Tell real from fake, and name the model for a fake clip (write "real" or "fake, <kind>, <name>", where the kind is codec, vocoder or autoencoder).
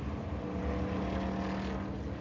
real